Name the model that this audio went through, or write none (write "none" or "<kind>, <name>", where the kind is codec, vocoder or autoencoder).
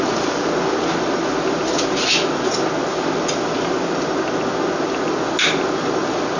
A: none